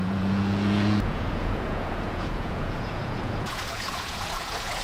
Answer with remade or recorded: remade